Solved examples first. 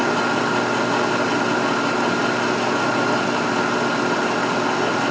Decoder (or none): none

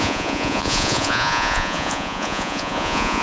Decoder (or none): vocoder, Vocos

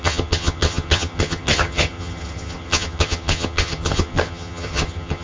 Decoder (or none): vocoder, HiFi-GAN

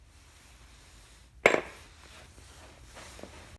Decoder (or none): none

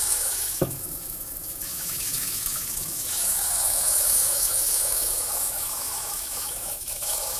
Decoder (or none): autoencoder, DAC-VAE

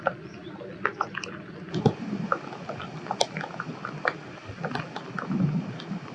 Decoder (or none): none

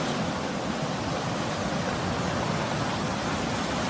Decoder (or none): none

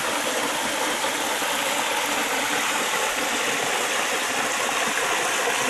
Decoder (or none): none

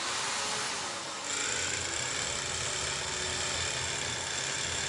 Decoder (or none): none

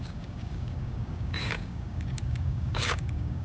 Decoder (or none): codec, DAC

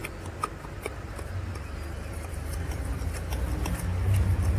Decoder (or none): none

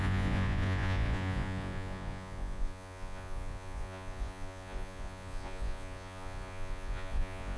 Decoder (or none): vocoder, Vocos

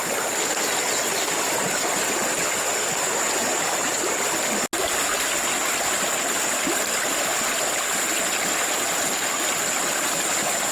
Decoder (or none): none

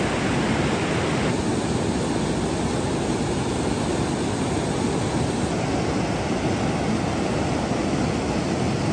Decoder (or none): none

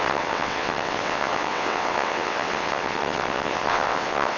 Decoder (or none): vocoder, WaveNeXt